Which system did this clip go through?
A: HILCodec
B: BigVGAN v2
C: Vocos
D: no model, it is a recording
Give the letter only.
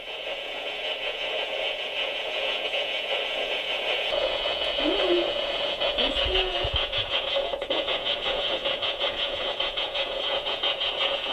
C